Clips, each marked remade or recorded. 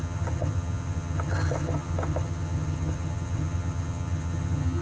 remade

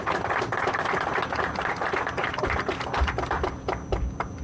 recorded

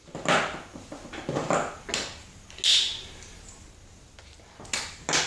recorded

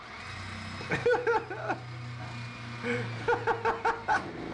recorded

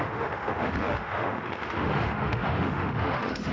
remade